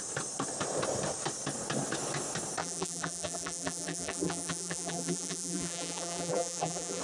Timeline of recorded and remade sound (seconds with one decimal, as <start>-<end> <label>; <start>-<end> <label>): 0.0-2.6 recorded; 2.6-7.0 remade